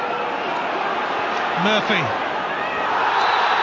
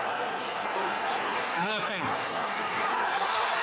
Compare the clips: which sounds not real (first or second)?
second